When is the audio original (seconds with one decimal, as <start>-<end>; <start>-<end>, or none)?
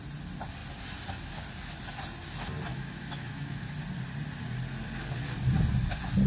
0.0-2.7; 3.7-6.3